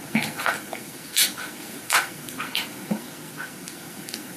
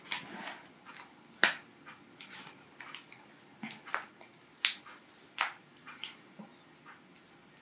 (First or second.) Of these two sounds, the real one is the second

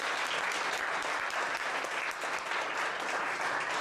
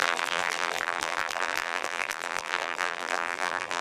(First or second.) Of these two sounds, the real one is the first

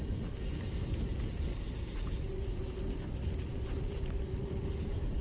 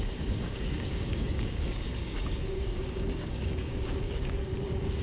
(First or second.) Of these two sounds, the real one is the first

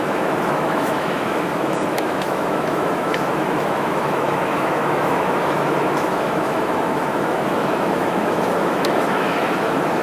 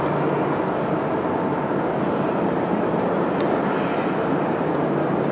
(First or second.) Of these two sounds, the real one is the second